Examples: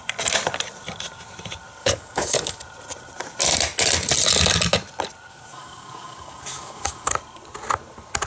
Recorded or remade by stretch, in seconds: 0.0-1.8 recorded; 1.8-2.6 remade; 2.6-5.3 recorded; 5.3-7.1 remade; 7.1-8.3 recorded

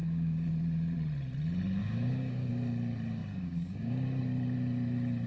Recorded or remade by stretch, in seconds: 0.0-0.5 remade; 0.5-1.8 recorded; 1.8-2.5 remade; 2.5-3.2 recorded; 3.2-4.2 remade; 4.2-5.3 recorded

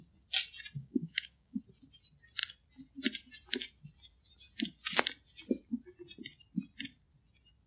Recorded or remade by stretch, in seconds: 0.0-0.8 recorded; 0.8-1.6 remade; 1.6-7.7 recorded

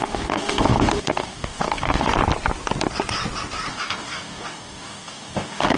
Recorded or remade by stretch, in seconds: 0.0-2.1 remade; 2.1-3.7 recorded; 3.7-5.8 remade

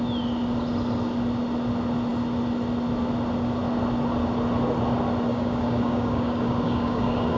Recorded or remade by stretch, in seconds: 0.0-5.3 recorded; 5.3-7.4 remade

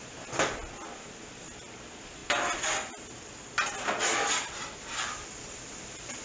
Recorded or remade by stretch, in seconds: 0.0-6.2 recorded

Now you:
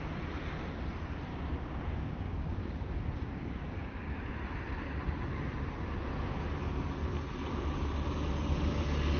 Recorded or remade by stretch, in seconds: 0.0-1.3 recorded; 1.3-4.2 remade; 4.2-9.2 recorded